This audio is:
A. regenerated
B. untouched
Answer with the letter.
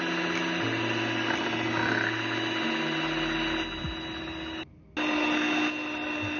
B